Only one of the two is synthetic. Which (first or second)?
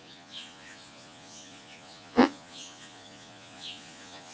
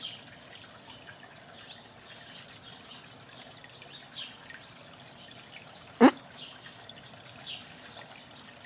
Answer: first